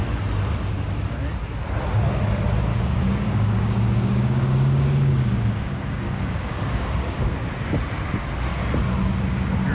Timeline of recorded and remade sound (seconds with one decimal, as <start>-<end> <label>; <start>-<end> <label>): 0.0-2.7 recorded; 2.7-7.3 remade; 7.3-9.7 recorded

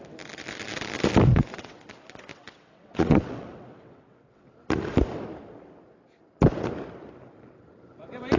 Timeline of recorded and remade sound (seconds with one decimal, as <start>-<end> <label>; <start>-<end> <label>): 0.0-1.3 recorded; 1.3-1.9 remade; 1.9-2.3 recorded; 2.3-4.5 remade; 4.5-8.4 recorded

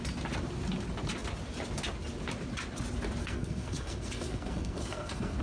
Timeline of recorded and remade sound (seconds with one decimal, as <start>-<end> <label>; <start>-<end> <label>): 0.0-3.2 recorded; 3.2-5.4 remade